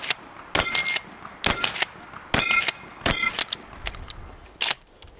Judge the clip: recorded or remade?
recorded